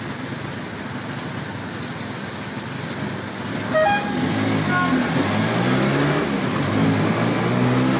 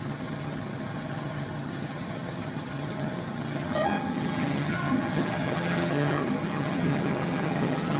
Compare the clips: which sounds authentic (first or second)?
first